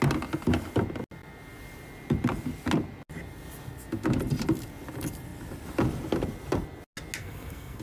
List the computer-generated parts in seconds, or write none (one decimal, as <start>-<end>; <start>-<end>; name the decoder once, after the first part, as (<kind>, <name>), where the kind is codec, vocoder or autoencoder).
7.2-7.8 (codec, SNAC)